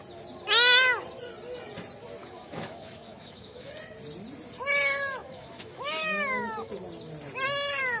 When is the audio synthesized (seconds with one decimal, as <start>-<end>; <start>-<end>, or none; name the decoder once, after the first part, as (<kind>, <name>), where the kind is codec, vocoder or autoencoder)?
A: 2.2-3.7 (autoencoder, DAC-VAE); 5.2-6.7